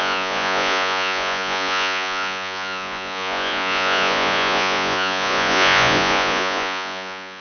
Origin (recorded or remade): remade